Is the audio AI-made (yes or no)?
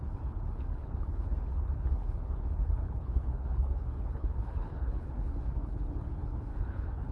yes